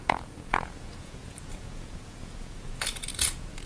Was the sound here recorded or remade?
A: remade